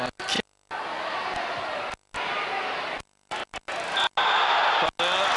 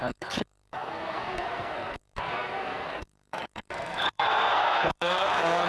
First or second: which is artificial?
second